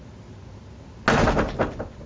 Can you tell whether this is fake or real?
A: real